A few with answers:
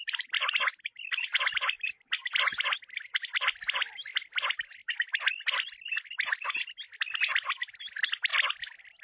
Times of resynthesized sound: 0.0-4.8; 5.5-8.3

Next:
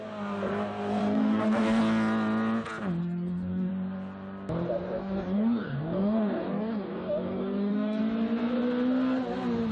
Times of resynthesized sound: 1.0-1.8; 3.0-3.7; 5.0-8.0

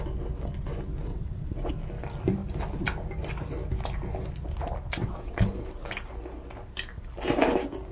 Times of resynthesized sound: 1.1-1.7; 5.0-5.5

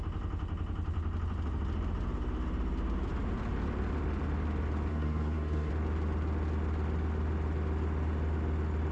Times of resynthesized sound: 4.9-5.7

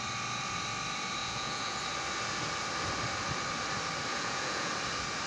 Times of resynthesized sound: 1.2-1.8; 4.1-4.7

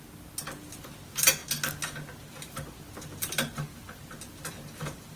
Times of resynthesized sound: none

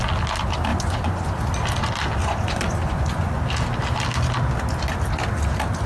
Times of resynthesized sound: 0.7-1.3; 2.2-3.4

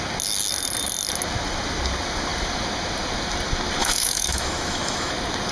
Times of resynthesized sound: 3.8-5.1